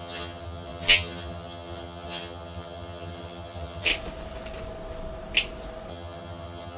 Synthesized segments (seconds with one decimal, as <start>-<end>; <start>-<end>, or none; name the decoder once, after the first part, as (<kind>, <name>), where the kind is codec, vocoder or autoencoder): 0.0-3.9 (vocoder, HiFi-GAN); 5.9-6.8